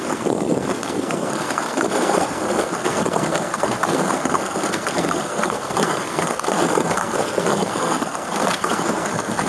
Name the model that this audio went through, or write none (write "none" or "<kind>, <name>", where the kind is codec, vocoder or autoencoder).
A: codec, SNAC